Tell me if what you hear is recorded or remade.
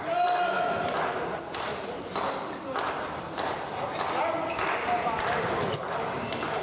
recorded